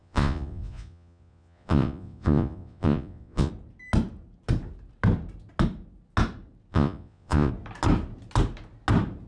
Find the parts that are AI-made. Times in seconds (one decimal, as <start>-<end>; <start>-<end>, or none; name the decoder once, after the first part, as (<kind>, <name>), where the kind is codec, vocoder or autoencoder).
0.0-3.5 (vocoder, Vocos); 6.7-7.5